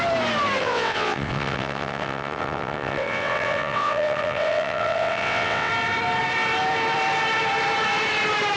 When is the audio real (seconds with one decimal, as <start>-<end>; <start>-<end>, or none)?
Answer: 0.0-0.6; 5.7-8.6